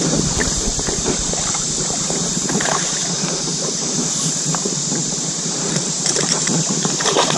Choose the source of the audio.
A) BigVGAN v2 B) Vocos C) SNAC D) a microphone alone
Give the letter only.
A